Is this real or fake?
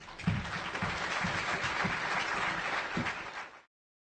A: fake